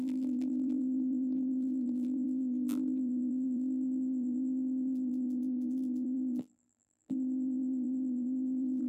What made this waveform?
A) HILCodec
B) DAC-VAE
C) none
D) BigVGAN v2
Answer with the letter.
D